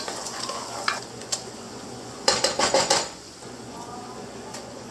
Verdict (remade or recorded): remade